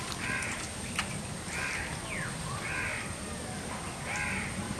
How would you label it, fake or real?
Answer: real